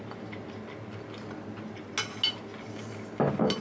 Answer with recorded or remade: recorded